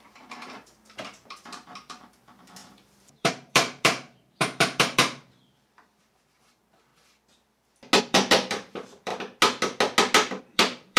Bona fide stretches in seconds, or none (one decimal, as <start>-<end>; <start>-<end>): 6.9-8.0; 9.1-10.4